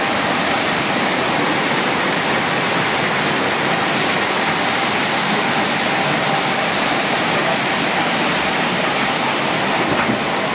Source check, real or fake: fake